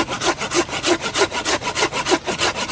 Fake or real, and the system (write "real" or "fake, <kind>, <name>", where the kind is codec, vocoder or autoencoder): real